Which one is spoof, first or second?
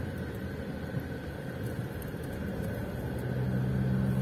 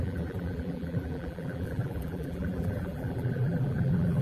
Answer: second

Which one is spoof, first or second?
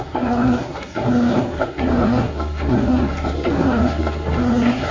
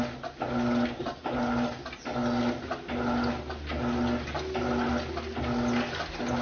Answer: first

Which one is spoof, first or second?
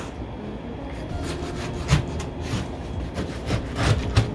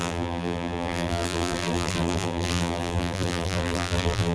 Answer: second